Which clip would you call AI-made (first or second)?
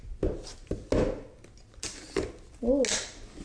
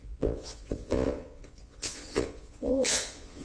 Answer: second